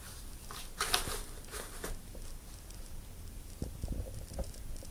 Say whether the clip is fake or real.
real